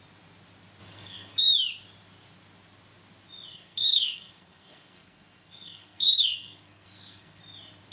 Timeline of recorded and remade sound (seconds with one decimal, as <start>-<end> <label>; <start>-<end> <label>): 0.0-0.8 recorded; 0.8-1.4 remade; 1.4-3.5 recorded; 3.5-7.4 remade; 7.4-7.9 recorded